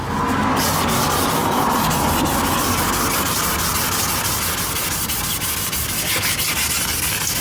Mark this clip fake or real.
real